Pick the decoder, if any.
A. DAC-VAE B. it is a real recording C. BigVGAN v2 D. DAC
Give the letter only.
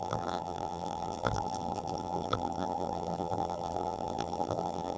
C